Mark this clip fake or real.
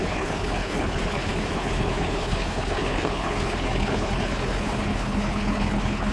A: fake